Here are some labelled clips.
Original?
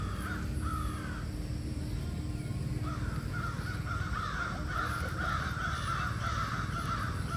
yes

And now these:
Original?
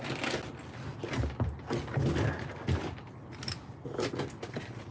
yes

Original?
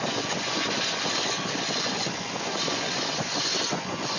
no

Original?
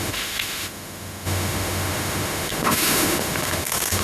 no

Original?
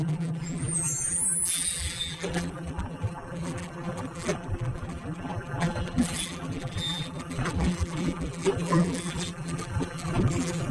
no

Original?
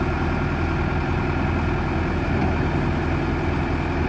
yes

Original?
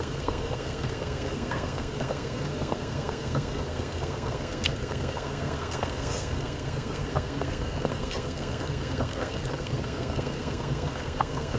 no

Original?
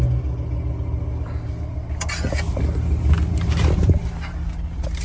yes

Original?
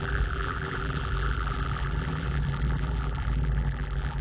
no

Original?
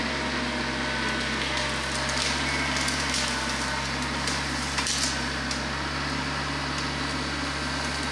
yes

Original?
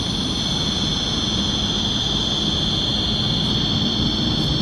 yes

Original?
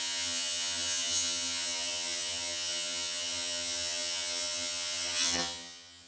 no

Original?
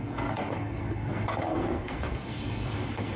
no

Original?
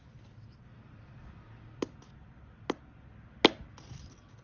yes